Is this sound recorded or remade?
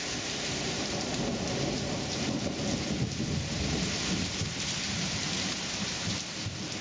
recorded